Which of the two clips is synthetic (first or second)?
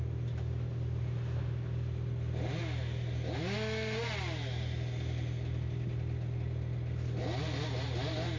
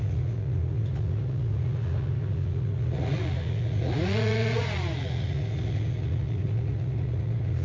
second